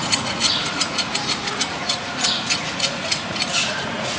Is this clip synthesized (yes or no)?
yes